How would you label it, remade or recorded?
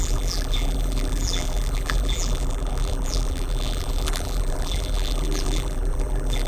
remade